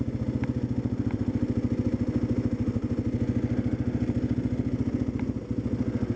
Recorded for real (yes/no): yes